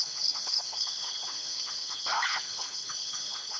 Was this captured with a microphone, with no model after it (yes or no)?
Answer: no